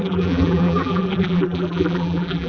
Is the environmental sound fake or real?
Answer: fake